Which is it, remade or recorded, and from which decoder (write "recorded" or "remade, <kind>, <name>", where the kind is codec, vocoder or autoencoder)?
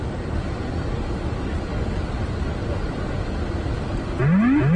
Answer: recorded